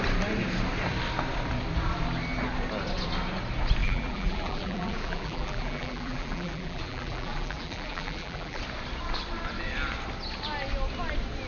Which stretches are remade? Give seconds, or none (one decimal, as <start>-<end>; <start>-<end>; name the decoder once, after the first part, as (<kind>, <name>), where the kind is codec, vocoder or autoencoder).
3.8-8.6 (vocoder, BigVGAN v2)